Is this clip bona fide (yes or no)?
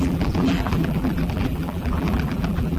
no